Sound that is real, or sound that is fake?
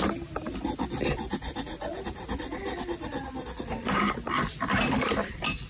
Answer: real